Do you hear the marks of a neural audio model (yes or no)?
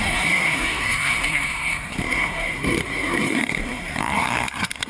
yes